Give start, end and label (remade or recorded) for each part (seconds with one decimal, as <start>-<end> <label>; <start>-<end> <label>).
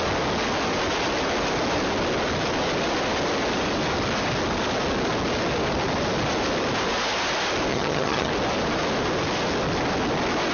0.0-7.7 recorded; 7.7-8.3 remade; 8.3-10.5 recorded